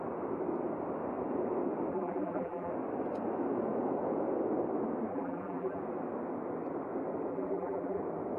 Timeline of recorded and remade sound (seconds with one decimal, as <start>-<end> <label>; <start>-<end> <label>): 0.0-1.9 recorded; 1.9-2.7 remade; 2.7-5.1 recorded; 5.1-5.8 remade; 5.8-7.3 recorded; 7.3-8.0 remade; 8.0-8.4 recorded